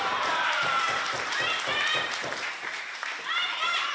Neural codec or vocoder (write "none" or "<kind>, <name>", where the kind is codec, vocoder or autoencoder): vocoder, BigVGAN v2